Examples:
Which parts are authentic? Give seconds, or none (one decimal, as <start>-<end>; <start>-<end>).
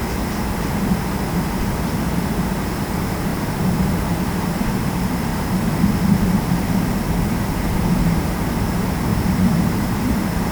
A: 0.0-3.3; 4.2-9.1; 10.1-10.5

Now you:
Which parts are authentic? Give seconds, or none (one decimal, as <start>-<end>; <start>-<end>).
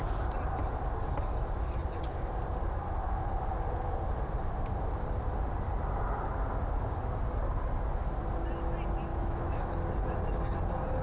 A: 0.0-9.1; 9.7-11.0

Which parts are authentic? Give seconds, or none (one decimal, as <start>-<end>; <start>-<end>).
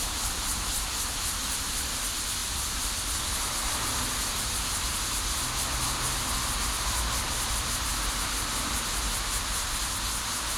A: 0.0-10.6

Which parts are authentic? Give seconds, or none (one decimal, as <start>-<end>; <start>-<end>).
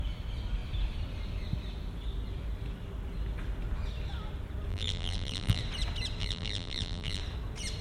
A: 0.0-4.7; 5.6-6.2; 7.2-7.8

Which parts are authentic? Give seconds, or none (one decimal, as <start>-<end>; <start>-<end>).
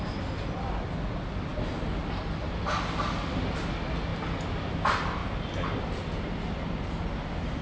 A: 0.0-7.6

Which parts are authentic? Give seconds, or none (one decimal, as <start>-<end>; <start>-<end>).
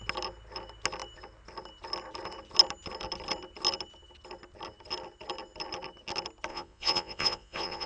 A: 0.0-6.5